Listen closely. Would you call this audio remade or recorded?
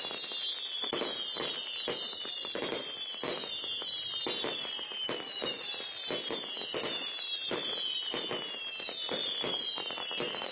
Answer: recorded